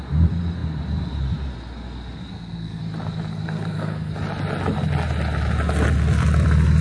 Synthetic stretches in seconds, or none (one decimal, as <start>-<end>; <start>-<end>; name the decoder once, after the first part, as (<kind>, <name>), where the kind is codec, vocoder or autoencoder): 2.3-2.8 (codec, SNAC); 3.3-4.1